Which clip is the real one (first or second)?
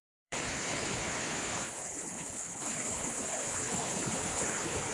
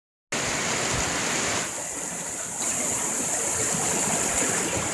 second